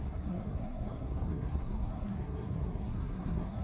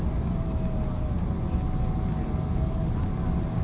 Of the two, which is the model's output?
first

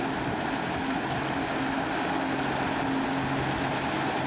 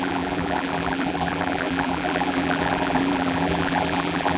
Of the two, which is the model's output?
second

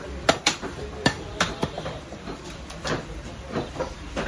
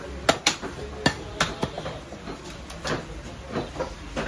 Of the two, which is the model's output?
first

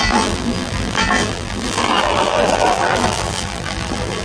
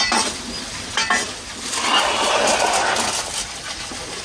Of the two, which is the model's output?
first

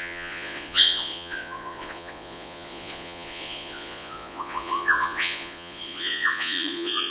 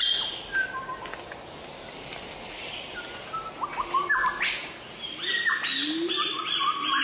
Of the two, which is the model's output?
first